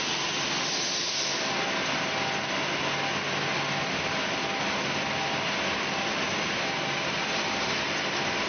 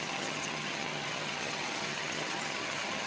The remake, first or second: second